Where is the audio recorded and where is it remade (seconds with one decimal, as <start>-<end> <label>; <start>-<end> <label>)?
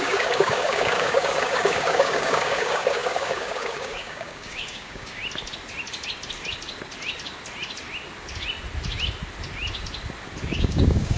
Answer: 0.0-5.2 remade; 5.2-10.4 recorded; 10.4-11.2 remade